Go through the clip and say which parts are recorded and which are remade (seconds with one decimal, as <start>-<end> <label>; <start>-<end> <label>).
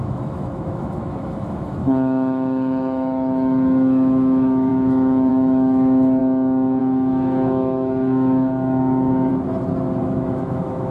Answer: 0.0-6.2 remade; 6.2-6.8 recorded; 6.8-9.3 remade; 9.3-10.0 recorded; 10.0-10.9 remade